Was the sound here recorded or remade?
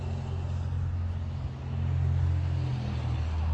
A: recorded